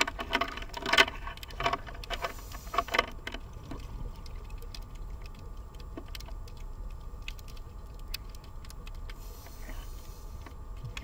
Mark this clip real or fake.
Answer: real